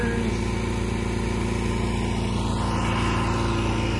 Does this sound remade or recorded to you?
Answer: recorded